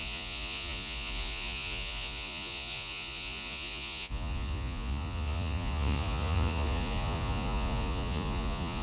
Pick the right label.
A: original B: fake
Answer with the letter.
B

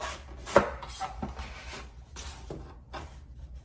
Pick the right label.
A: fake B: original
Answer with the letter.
B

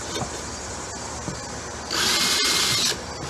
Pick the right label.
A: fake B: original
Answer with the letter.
B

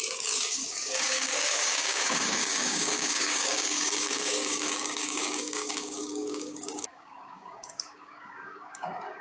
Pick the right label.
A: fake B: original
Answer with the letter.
A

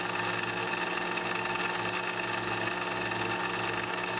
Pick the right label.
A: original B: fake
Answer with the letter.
A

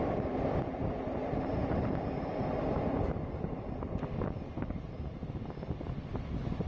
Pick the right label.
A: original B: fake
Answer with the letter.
A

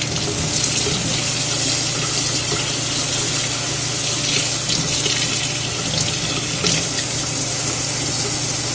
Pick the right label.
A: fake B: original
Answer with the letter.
B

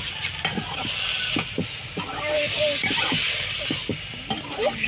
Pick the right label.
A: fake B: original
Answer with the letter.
B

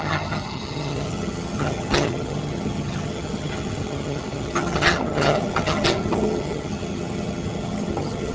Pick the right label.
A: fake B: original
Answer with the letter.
A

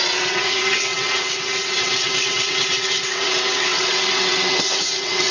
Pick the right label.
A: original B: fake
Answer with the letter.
B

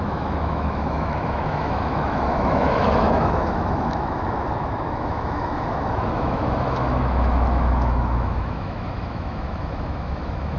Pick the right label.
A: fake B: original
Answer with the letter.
A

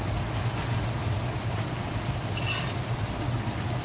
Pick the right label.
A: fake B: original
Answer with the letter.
B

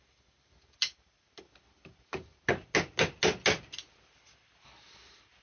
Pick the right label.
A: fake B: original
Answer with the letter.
B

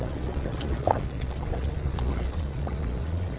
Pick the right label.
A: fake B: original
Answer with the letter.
A